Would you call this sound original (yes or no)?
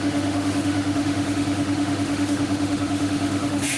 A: no